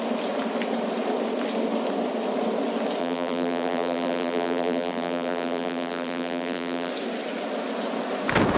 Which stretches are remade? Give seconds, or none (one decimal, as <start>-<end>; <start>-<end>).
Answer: 3.0-6.9